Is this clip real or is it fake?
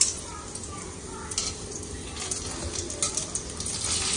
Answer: real